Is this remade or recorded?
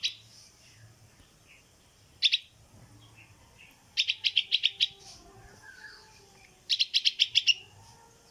remade